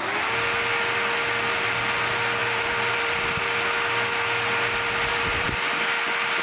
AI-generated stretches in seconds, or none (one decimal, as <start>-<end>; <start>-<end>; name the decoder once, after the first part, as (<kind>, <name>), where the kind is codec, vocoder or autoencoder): 2.4-3.4 (vocoder, BigVGAN v2); 5.1-5.7